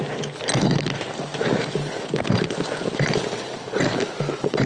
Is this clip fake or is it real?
real